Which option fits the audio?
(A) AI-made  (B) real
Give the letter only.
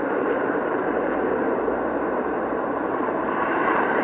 A